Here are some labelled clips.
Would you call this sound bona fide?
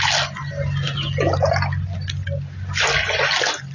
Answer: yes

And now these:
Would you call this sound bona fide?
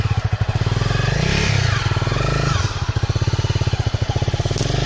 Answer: yes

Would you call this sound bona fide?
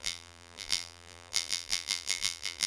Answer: no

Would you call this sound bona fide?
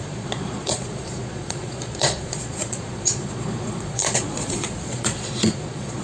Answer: no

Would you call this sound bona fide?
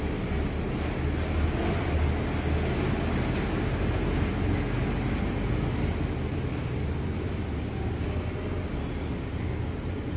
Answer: yes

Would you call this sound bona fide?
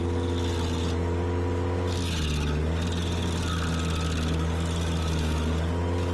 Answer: yes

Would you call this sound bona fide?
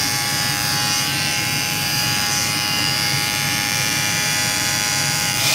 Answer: no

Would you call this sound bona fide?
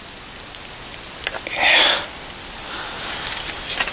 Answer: yes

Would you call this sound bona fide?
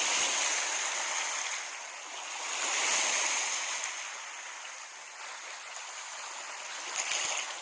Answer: yes